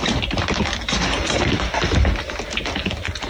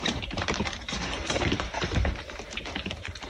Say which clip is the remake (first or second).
second